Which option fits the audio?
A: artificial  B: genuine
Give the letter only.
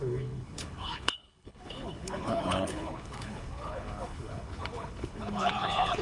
A